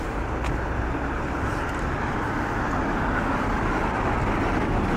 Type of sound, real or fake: real